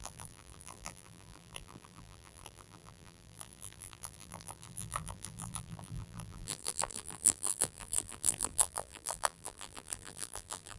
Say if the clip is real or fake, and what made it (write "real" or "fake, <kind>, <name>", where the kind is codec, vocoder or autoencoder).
fake, vocoder, BigVGAN v2